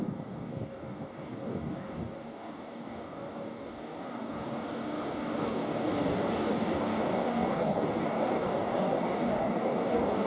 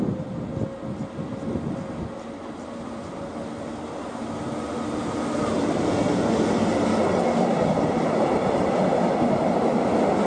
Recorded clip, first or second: second